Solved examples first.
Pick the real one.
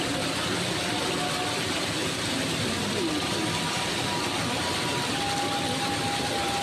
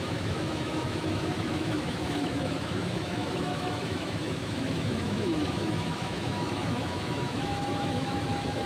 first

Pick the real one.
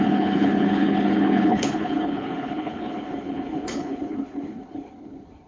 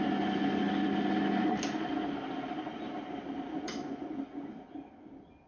second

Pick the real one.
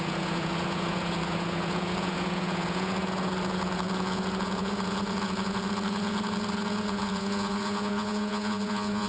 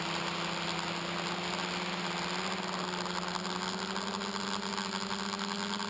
second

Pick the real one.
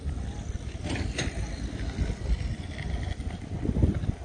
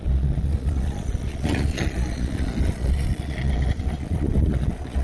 first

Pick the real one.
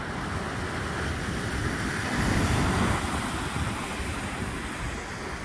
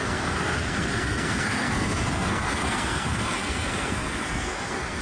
first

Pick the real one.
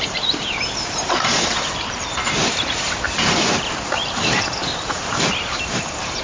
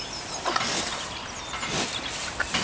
second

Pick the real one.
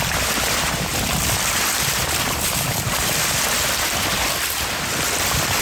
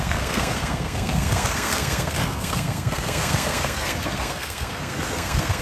first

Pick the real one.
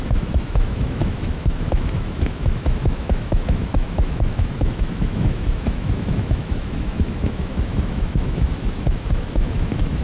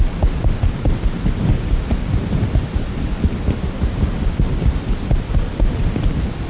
second